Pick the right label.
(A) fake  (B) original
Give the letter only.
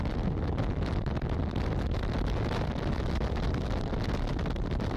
B